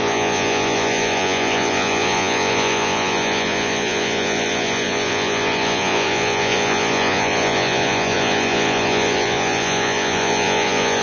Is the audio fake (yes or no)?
yes